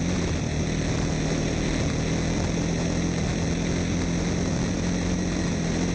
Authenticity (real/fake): real